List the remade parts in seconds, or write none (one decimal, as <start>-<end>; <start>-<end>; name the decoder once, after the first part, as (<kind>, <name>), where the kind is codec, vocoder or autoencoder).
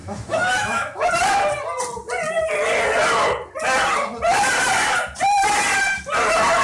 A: 0.0-1.1 (autoencoder, DAC-VAE)